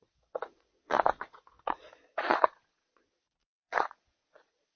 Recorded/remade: remade